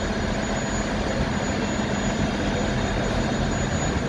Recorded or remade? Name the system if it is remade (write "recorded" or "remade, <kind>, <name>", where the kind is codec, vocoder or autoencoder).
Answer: recorded